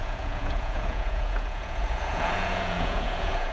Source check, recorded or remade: remade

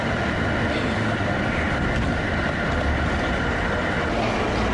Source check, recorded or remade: recorded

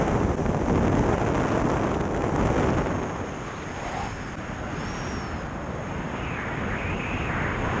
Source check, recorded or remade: recorded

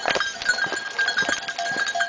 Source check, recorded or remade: recorded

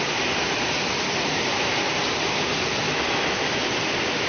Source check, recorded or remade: recorded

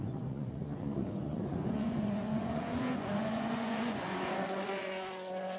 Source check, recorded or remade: remade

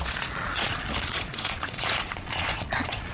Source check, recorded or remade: remade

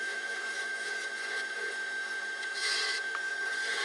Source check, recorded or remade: remade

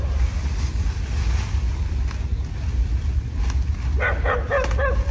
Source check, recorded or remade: recorded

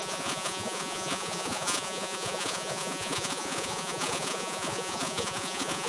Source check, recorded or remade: remade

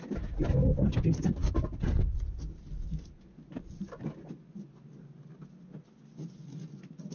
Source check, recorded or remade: recorded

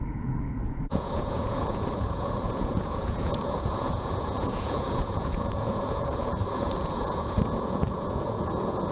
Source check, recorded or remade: remade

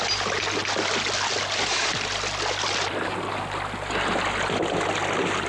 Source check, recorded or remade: recorded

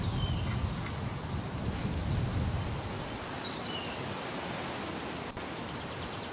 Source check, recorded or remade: recorded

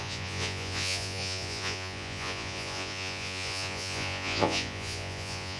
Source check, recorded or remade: remade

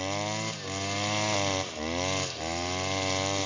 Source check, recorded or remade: recorded